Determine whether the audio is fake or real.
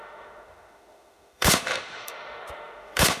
fake